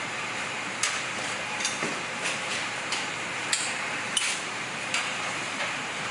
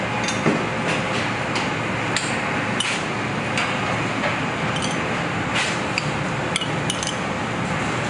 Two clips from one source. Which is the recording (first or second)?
second